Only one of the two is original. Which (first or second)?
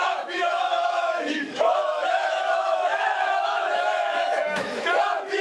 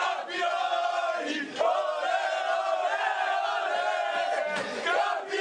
second